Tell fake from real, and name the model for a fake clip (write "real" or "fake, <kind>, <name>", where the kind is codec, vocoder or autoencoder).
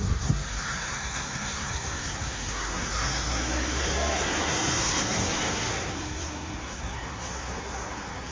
fake, codec, SNAC